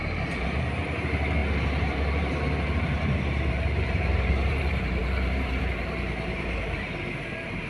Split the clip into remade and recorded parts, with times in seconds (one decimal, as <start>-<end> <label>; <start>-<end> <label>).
0.0-7.7 remade